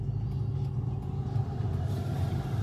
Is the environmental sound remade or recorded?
recorded